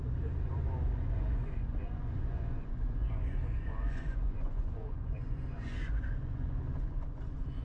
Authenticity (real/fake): fake